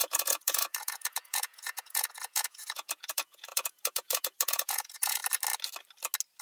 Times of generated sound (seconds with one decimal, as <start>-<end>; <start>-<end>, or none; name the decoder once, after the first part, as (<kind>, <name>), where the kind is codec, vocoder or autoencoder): 0.0-5.2 (vocoder, Vocos)